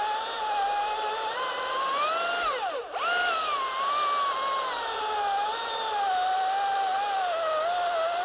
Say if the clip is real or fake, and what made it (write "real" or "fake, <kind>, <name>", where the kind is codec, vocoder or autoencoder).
real